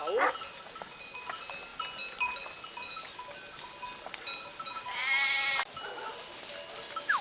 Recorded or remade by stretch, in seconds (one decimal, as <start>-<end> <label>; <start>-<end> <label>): 0.0-7.2 recorded